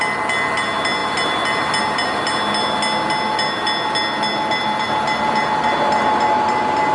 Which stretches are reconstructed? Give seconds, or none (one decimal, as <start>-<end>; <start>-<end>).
none